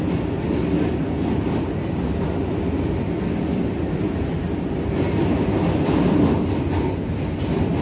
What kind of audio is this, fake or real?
real